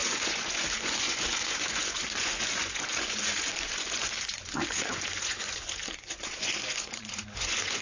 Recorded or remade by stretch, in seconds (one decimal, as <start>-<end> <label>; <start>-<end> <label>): 0.0-7.8 remade